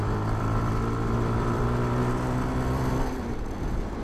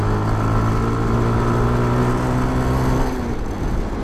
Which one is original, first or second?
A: second